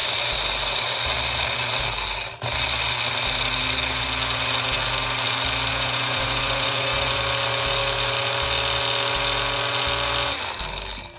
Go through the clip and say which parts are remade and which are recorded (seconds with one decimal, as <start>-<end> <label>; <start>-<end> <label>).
0.0-5.7 recorded; 5.7-7.2 remade; 7.2-11.2 recorded